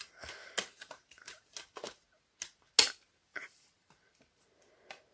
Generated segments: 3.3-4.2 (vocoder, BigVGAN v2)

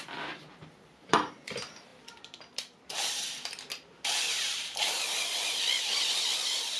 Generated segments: 0.0-6.8 (vocoder, BigVGAN v2)

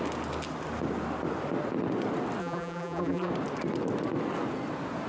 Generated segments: 2.4-3.3 (vocoder, BigVGAN v2)

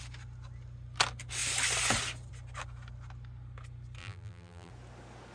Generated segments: 4.0-4.7 (vocoder, BigVGAN v2)

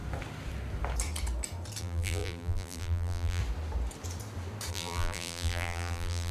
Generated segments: 1.8-3.4 (vocoder, BigVGAN v2); 4.7-6.3

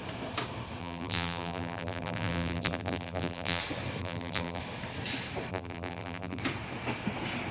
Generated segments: 0.8-3.6 (vocoder, BigVGAN v2); 4.0-4.6; 5.5-6.4

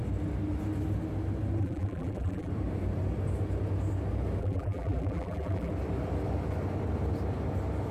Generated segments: 1.6-2.5 (vocoder, BigVGAN v2); 4.4-5.7

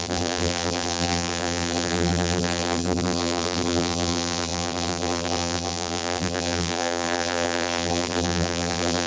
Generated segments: 0.0-9.1 (vocoder, BigVGAN v2)